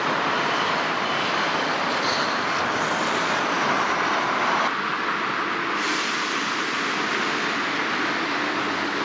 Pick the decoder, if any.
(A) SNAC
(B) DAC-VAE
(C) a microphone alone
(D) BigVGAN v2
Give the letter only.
C